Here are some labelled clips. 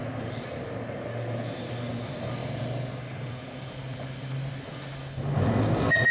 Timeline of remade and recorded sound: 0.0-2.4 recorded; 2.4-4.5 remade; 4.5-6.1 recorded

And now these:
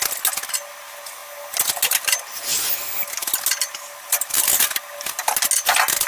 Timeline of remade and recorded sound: 0.0-6.1 recorded

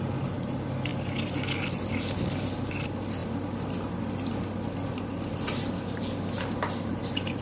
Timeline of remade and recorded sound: 0.0-7.4 remade

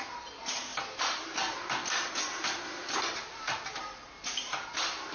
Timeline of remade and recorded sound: 0.0-0.7 recorded; 0.7-1.2 remade; 1.2-2.8 recorded; 2.8-3.8 remade; 3.8-5.1 recorded

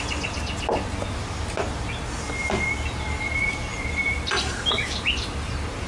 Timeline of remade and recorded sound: 0.0-3.6 recorded; 3.6-5.5 remade; 5.5-5.9 recorded

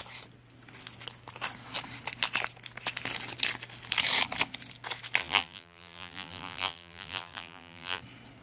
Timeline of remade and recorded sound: 0.0-5.2 recorded; 5.2-8.0 remade; 8.0-8.4 recorded